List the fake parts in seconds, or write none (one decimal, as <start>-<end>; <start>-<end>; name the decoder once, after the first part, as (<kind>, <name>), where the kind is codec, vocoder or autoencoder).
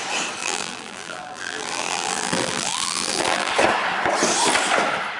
0.4-3.5 (vocoder, BigVGAN v2)